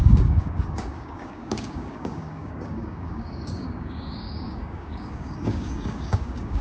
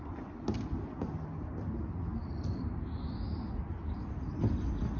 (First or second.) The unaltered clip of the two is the second